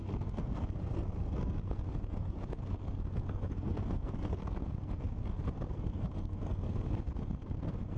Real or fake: fake